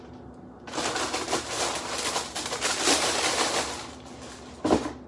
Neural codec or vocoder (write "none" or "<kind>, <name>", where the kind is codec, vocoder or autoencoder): none